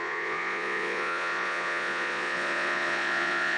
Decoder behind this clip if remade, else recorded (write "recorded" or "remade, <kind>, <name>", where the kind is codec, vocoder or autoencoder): remade, vocoder, Vocos